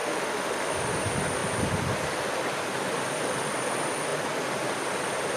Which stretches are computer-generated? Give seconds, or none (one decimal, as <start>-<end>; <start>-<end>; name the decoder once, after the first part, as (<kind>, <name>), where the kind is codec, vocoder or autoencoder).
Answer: 0.0-0.7 (autoencoder, DAC-VAE)